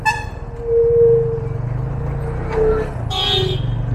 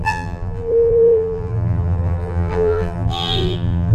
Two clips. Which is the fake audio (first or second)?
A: second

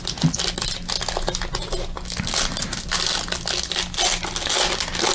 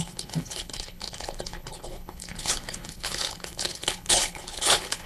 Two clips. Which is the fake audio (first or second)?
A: second